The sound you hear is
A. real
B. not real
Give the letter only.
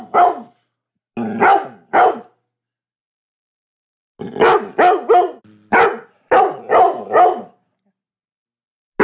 A